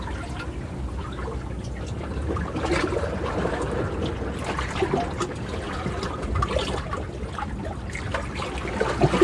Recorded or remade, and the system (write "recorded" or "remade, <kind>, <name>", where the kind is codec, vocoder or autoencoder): recorded